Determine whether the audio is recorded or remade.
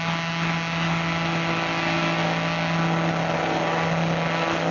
recorded